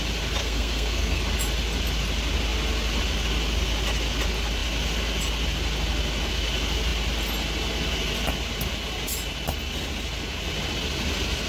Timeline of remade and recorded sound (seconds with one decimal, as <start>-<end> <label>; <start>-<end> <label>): 0.0-0.4 recorded; 0.4-1.2 remade; 1.2-11.5 recorded